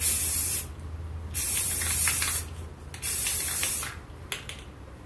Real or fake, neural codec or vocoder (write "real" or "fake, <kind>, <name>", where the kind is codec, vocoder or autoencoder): real